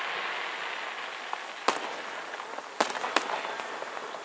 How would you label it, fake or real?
real